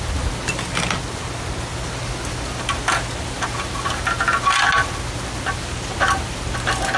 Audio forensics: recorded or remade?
recorded